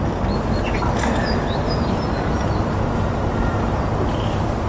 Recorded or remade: recorded